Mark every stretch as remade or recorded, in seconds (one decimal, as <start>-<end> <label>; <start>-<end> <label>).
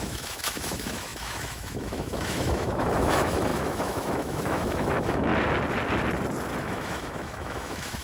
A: 0.0-5.3 remade; 5.3-6.6 recorded; 6.6-8.0 remade